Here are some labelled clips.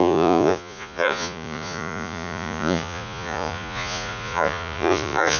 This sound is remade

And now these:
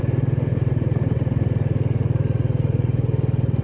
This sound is recorded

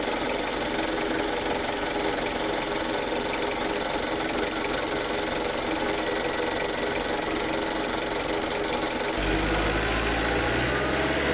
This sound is recorded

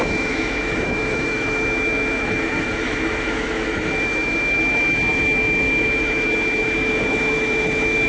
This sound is remade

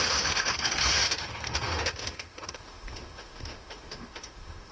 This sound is remade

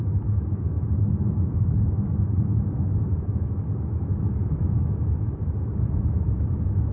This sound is remade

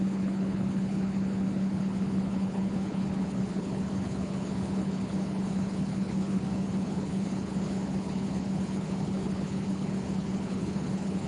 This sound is remade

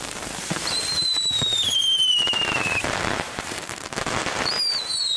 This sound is remade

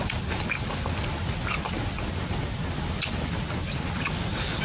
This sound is recorded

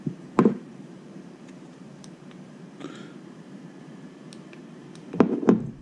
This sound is remade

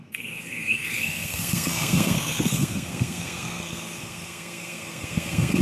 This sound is remade